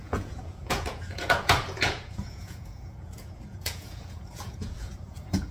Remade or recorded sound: remade